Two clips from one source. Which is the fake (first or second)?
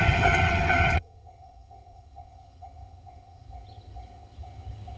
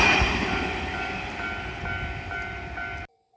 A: first